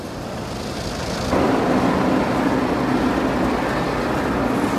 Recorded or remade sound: recorded